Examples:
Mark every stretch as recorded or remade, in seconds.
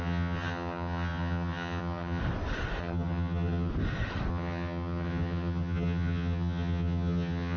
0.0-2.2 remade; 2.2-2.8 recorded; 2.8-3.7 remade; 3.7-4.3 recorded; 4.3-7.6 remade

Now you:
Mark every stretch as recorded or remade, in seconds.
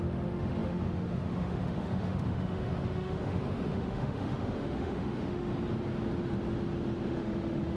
0.0-5.5 remade; 5.5-7.1 recorded; 7.1-7.8 remade